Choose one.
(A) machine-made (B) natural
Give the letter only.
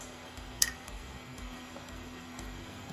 A